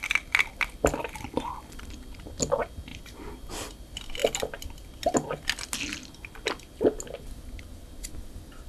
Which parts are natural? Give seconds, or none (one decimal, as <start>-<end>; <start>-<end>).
0.0-2.9; 3.5-8.7